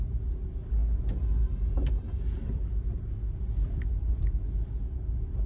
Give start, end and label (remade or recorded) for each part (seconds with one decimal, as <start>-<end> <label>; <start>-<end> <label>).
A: 0.0-5.5 recorded